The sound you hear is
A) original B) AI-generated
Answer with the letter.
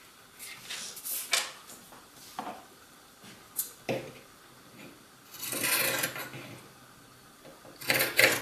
A